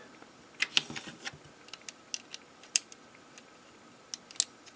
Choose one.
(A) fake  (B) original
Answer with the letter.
B